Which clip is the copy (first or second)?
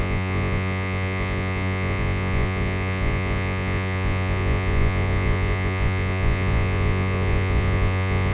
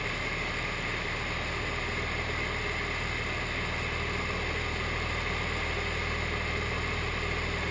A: first